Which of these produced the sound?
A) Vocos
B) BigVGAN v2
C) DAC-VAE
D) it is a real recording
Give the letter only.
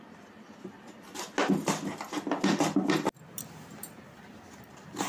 D